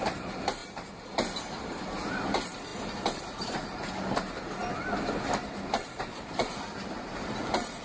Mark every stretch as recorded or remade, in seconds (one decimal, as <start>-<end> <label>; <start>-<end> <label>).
0.0-0.6 remade; 0.6-2.1 recorded; 2.1-4.6 remade; 4.6-5.8 recorded; 5.8-7.8 remade